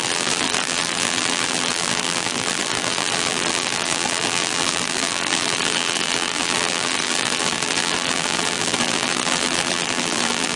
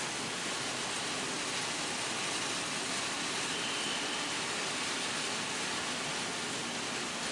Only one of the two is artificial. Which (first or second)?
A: first